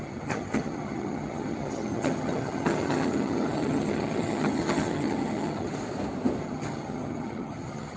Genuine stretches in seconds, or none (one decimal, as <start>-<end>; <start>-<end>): 5.7-6.4